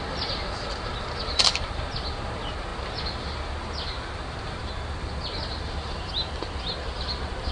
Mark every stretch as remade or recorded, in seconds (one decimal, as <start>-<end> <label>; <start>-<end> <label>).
0.0-7.5 recorded